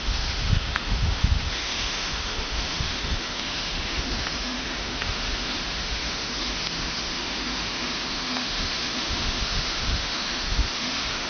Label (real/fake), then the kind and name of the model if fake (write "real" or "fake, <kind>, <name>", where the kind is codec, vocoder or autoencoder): fake, autoencoder, DAC-VAE